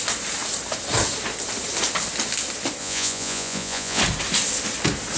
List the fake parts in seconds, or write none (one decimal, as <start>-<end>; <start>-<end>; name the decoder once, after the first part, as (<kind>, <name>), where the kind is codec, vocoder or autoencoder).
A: 2.8-4.0 (vocoder, Vocos)